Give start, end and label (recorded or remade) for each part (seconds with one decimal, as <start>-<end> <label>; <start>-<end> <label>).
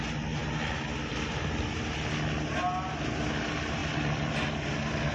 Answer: 0.0-3.8 recorded; 3.8-4.3 remade; 4.3-5.1 recorded